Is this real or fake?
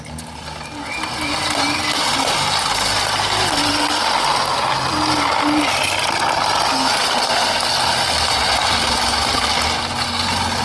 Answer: real